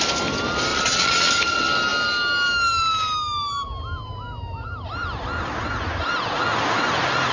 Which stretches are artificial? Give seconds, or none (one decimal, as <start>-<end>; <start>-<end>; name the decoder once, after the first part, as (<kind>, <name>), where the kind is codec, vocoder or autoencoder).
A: 0.7-1.3 (vocoder, Vocos)